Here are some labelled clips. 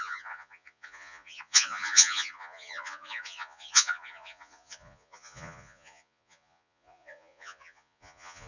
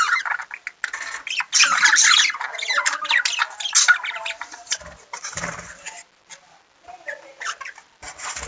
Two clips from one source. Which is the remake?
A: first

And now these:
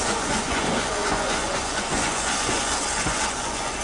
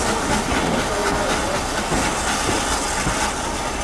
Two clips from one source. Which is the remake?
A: first